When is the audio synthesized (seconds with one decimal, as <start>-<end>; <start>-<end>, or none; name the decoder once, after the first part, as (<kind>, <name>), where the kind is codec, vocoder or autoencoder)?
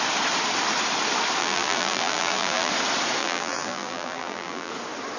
1.4-2.7 (vocoder, BigVGAN v2); 3.2-4.7